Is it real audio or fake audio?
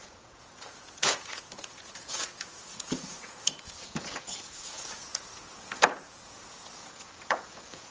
fake